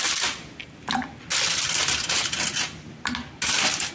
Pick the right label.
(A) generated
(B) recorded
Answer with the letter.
B